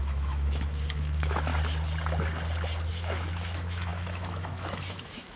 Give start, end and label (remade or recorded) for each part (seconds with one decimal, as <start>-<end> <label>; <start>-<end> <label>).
0.0-1.5 remade; 1.5-2.9 recorded; 2.9-5.4 remade